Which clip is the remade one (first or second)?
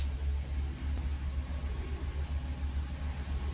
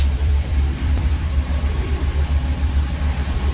second